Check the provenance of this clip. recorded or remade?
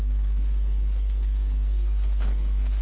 remade